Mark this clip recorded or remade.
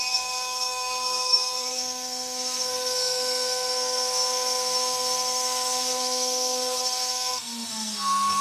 remade